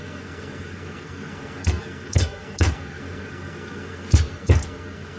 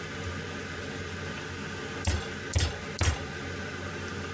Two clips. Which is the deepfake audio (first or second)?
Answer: first